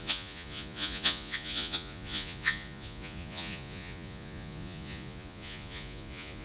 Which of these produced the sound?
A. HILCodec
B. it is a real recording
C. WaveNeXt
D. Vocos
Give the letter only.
D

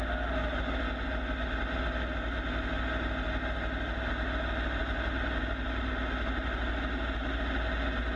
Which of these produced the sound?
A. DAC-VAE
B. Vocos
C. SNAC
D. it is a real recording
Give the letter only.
D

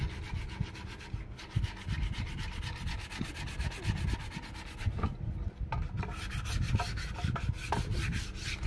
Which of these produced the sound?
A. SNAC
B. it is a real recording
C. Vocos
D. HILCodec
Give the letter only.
B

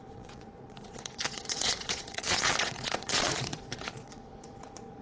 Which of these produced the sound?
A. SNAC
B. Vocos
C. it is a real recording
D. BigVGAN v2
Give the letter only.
B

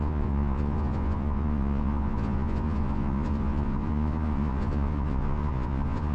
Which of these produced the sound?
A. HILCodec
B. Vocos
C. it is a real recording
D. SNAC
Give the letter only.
B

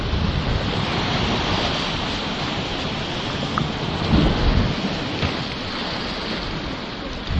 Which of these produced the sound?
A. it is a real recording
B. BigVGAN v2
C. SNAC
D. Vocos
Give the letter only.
A